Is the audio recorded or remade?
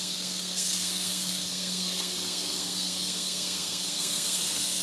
remade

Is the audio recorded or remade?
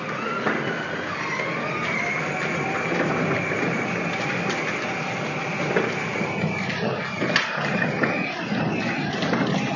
recorded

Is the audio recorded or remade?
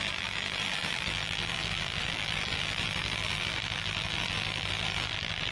remade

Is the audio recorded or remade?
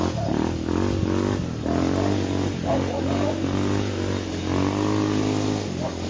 recorded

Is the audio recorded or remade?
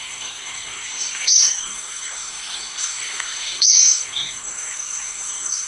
remade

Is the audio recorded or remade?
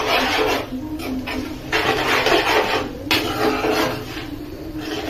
recorded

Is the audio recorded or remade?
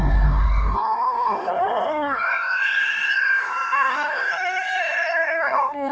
remade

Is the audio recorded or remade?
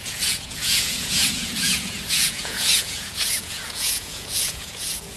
remade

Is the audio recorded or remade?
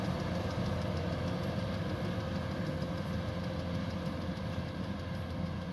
recorded